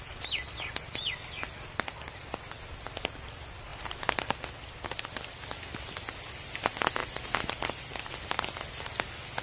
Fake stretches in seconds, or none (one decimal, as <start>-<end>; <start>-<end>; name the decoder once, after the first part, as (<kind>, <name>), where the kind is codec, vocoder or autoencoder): 3.7-4.3 (vocoder, BigVGAN v2); 7.0-8.0